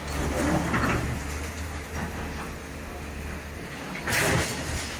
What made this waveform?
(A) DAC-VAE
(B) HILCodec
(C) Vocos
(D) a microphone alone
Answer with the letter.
D